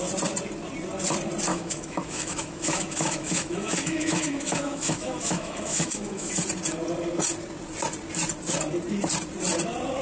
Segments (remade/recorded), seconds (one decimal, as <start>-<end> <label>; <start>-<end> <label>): 0.0-1.5 recorded; 1.5-6.3 remade; 6.3-10.0 recorded